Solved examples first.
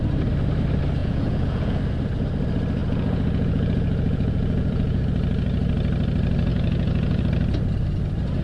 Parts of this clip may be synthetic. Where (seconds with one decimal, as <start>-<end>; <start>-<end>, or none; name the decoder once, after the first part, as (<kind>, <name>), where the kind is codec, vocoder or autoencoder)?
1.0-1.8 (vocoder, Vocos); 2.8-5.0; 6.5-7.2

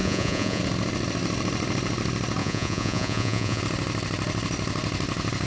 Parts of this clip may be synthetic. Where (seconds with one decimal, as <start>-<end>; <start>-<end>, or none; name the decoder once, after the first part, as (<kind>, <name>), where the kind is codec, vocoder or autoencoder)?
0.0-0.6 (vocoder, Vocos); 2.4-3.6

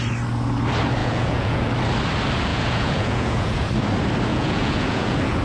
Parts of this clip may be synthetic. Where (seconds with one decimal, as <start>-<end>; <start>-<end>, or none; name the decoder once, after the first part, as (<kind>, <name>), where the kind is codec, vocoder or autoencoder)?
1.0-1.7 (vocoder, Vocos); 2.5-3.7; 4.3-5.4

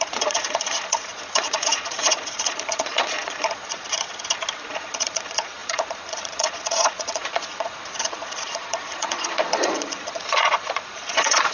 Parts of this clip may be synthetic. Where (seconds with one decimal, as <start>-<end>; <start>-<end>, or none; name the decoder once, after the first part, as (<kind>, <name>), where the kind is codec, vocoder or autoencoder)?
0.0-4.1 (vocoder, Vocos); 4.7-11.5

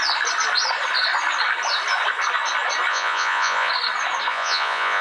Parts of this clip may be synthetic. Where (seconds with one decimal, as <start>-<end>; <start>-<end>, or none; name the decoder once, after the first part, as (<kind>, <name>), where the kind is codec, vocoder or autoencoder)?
2.9-3.7 (vocoder, Vocos); 4.3-5.0

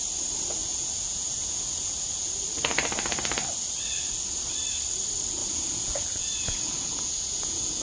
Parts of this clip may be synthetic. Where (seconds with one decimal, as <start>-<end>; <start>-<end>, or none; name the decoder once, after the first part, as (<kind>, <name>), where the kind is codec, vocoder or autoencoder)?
0.6-2.3 (vocoder, Vocos); 5.4-7.8

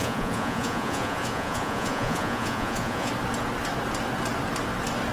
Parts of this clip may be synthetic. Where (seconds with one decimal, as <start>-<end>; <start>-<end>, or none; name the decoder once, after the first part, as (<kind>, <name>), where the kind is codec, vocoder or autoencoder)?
0.0-3.1 (vocoder, Vocos)